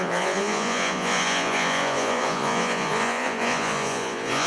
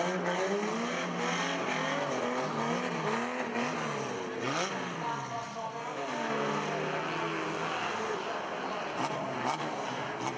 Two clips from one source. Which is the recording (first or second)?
second